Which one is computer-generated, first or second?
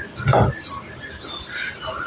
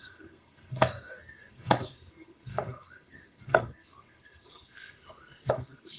second